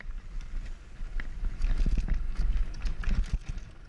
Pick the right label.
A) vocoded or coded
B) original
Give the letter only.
B